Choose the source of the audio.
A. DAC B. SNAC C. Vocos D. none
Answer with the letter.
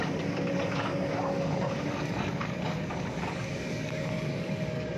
A